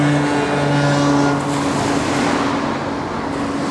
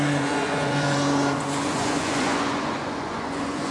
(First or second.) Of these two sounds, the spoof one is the second